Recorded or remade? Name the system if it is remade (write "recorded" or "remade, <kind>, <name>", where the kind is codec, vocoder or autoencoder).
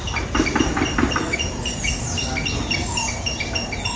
recorded